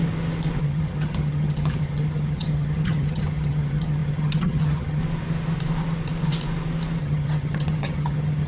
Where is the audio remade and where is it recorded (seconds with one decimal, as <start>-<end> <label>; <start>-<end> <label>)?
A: 0.0-0.6 recorded; 0.6-5.0 remade; 5.0-7.0 recorded; 7.0-8.5 remade